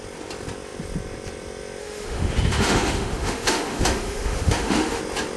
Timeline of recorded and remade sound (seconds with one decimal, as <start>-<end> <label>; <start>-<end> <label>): 0.0-1.8 recorded; 1.8-5.0 remade; 5.0-5.4 recorded